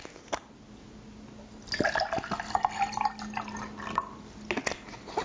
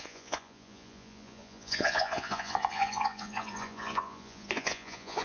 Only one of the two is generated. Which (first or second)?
second